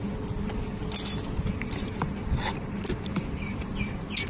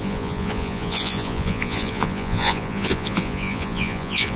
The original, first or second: first